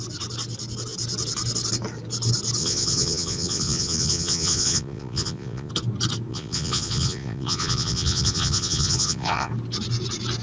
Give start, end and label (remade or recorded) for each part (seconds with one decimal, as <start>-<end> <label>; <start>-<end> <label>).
0.0-2.6 recorded; 2.6-5.7 remade; 5.7-6.3 recorded; 6.3-9.5 remade; 9.5-10.4 recorded